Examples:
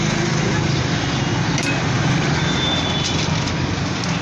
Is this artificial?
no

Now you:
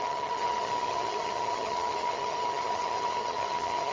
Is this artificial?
yes